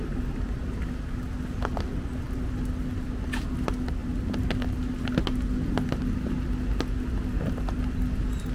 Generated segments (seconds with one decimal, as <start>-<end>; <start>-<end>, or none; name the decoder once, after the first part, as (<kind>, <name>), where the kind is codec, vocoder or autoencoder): none